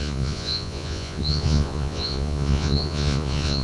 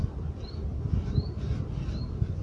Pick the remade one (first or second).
first